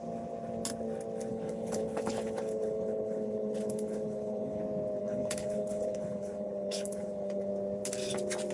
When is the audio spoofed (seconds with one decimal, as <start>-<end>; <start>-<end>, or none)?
1.3-4.6; 5.0-7.5